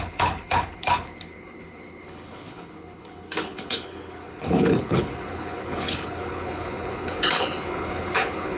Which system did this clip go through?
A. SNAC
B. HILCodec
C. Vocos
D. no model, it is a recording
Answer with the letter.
B